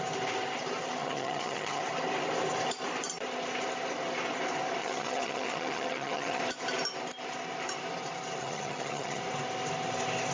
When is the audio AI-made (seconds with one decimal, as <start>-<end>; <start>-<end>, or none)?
1.0-1.8; 4.8-6.4; 8.4-9.2